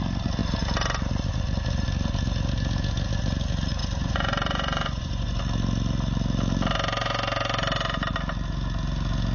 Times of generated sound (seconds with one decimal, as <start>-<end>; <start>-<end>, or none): 3.8-5.4